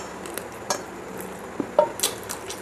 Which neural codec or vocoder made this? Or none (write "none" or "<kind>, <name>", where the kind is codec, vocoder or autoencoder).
none